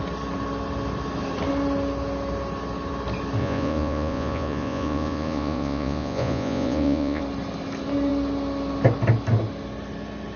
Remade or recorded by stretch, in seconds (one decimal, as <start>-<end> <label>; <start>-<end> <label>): 0.0-3.4 recorded; 3.4-7.2 remade; 7.2-10.4 recorded